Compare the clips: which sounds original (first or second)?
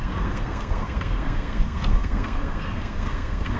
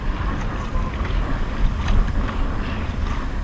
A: second